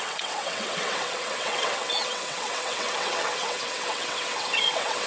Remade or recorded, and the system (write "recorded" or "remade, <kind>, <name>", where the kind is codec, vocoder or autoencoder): remade, vocoder, WaveNeXt